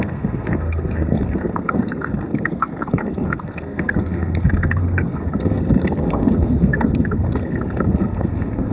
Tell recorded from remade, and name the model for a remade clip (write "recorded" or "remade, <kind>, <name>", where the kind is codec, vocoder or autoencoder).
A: remade, codec, SNAC